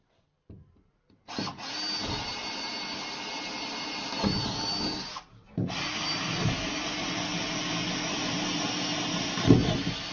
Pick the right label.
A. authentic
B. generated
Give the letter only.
A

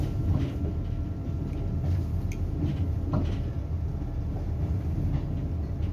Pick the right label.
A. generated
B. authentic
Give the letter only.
B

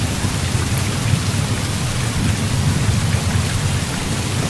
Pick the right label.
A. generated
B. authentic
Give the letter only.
B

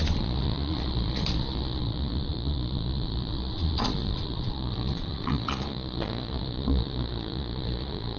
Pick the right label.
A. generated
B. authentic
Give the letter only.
A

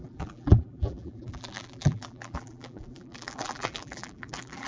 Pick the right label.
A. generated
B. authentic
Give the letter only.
A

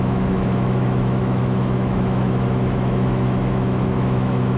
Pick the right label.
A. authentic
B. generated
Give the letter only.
B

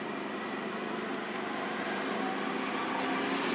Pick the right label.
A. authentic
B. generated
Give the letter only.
A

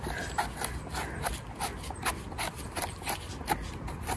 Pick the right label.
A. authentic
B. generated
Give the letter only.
A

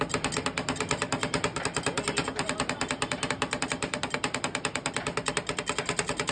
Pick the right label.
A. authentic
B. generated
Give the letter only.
A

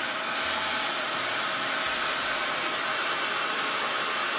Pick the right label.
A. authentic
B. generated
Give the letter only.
A